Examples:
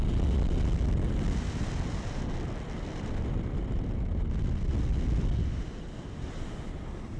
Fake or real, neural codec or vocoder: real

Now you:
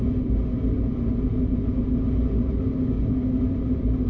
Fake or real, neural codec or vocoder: real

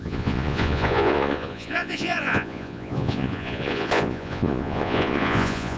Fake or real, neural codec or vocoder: fake, vocoder, Vocos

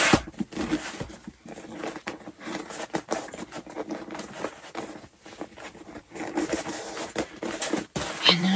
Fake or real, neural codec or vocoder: real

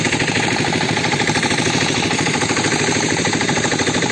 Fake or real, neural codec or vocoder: fake, vocoder, BigVGAN v2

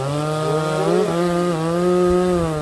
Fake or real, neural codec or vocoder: real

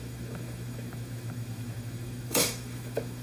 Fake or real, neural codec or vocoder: fake, autoencoder, DAC-VAE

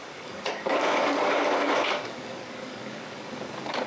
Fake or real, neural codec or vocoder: fake, codec, DAC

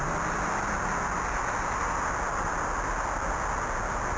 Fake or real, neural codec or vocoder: real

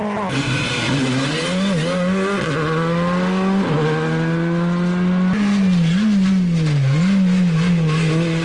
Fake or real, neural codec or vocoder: real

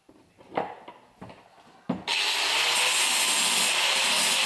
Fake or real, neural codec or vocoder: real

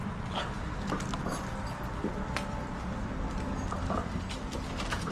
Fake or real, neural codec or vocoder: real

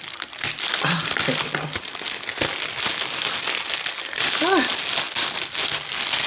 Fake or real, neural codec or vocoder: real